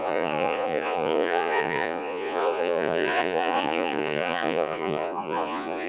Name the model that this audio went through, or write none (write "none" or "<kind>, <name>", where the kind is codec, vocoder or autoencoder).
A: vocoder, Vocos